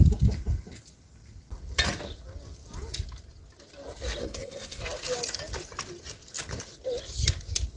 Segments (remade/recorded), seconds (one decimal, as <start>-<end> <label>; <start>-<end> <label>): 0.0-4.2 recorded; 4.2-4.8 remade; 4.8-7.8 recorded